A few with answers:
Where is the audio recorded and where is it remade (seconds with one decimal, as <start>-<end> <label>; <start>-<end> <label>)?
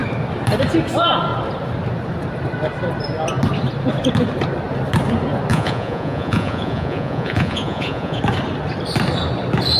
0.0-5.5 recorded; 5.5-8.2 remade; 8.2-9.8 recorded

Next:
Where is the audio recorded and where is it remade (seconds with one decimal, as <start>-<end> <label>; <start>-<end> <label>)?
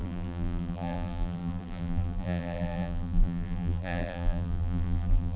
0.0-5.4 remade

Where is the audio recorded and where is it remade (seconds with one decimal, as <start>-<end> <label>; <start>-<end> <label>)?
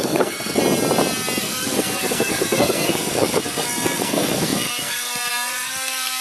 0.0-0.6 remade; 0.6-1.4 recorded; 1.4-6.2 remade